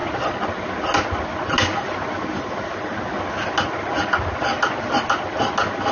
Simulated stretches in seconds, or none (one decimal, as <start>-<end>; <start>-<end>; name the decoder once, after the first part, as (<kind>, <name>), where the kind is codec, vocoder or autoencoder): none